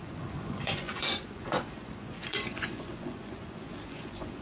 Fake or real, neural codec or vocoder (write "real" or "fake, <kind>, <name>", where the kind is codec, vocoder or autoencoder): fake, vocoder, Vocos